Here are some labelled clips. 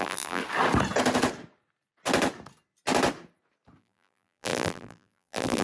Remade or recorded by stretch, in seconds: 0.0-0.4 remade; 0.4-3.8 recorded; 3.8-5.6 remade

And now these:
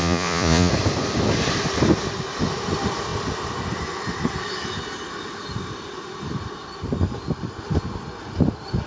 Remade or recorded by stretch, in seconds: 0.0-0.7 remade; 0.7-8.9 recorded